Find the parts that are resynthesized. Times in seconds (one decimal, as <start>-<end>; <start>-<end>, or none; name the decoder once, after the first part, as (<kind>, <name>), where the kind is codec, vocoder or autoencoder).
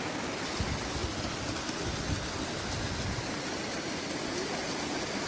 none